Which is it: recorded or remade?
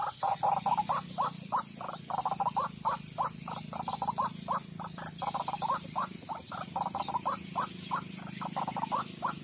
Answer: remade